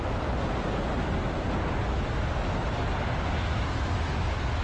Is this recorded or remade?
recorded